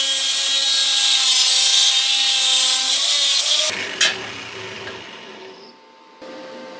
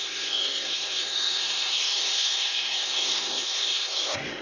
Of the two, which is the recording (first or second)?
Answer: first